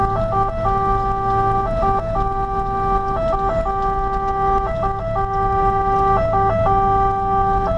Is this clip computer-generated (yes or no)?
no